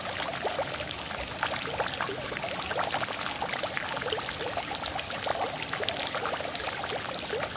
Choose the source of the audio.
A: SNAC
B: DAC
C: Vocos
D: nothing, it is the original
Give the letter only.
D